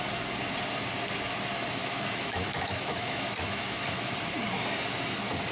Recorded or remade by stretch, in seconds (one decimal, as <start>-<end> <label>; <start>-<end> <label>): 0.0-1.8 recorded; 1.8-4.1 remade; 4.1-5.5 recorded